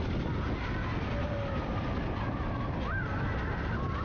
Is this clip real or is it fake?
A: real